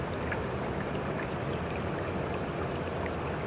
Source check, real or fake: real